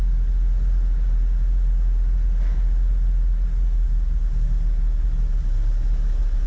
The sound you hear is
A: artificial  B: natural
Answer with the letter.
B